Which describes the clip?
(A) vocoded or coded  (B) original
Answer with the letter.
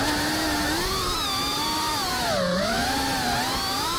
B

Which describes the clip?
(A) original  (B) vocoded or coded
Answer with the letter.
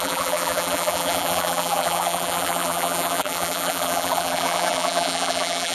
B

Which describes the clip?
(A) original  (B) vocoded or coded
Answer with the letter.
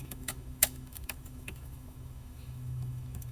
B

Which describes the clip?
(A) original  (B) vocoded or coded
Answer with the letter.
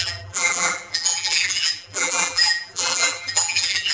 B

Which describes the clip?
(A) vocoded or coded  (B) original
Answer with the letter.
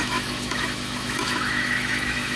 A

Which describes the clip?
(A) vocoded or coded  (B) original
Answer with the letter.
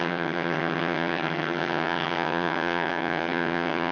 A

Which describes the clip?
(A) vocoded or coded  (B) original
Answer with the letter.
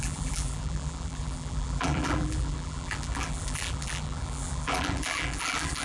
A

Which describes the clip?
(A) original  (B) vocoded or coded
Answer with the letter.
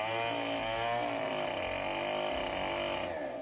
A